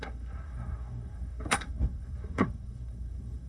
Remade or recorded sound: remade